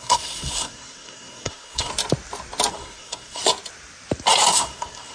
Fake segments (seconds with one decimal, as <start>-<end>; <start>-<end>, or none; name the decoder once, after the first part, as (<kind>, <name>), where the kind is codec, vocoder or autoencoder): 0.0-1.9 (codec, SNAC); 2.7-3.4; 4.5-5.1